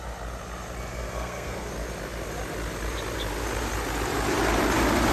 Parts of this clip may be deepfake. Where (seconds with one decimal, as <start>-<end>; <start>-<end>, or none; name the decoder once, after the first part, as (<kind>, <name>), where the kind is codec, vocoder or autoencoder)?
0.9-1.7 (codec, SNAC)